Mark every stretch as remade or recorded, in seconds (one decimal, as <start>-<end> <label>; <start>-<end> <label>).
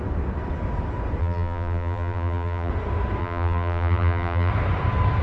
0.0-1.2 recorded; 1.2-2.7 remade; 2.7-3.2 recorded; 3.2-4.5 remade; 4.5-5.2 recorded